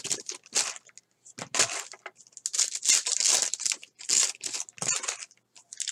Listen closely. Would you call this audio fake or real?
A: real